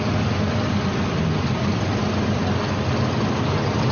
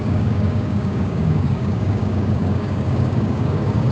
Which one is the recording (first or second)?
first